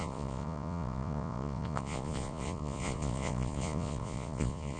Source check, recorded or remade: remade